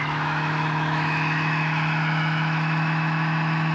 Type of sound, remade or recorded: remade